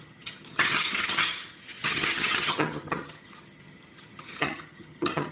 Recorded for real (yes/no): no